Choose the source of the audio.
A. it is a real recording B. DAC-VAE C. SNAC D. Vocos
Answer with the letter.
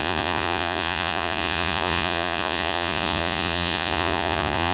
D